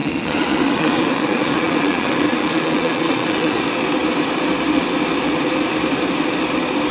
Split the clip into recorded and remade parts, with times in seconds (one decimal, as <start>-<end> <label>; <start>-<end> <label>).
0.0-3.6 remade; 3.6-6.9 recorded